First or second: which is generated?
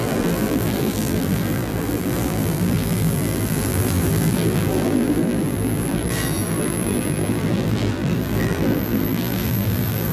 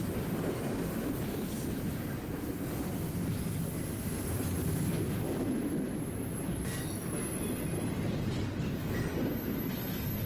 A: first